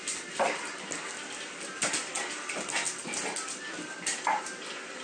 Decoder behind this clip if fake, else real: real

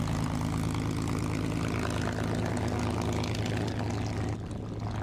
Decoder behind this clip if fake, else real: real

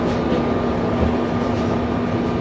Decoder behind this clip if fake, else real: real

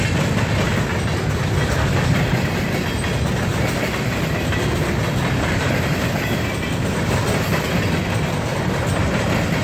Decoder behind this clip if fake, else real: real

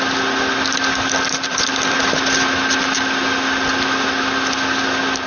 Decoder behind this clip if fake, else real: real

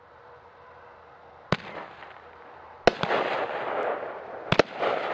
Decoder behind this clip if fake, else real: real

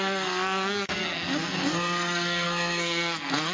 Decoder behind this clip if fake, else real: fake, codec, SNAC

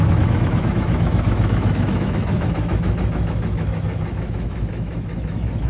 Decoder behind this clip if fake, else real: fake, autoencoder, DAC-VAE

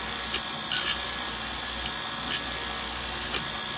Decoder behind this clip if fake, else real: real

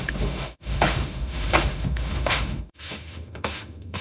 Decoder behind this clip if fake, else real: fake, autoencoder, DAC-VAE